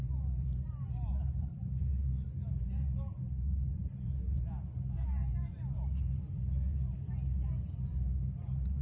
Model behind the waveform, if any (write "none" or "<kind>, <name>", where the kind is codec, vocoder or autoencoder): vocoder, BigVGAN v2